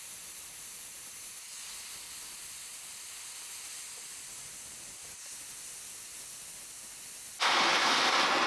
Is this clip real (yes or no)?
yes